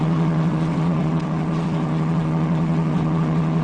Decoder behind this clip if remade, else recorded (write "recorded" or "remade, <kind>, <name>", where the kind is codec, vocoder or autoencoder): remade, vocoder, WaveNeXt